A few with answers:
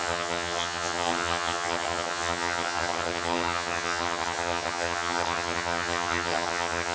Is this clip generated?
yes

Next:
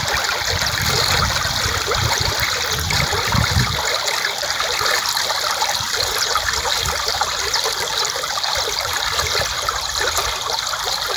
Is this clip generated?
no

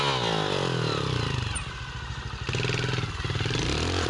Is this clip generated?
no